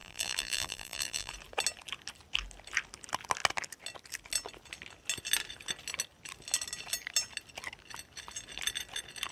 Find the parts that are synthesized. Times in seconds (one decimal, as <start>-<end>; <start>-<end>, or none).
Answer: 0.0-1.3